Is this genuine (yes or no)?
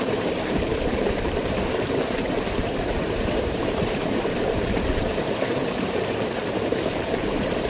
no